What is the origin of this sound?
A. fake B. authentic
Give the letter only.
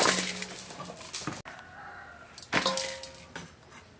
B